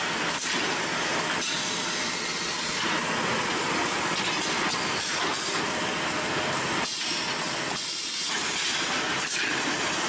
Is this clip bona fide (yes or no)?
yes